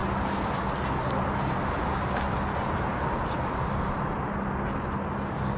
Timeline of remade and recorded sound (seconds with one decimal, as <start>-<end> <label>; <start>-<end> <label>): 0.0-5.6 recorded